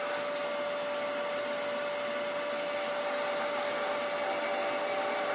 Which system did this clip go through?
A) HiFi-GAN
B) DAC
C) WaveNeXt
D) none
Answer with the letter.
D